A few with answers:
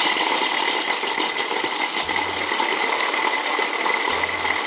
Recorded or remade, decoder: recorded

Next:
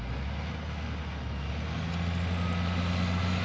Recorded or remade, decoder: recorded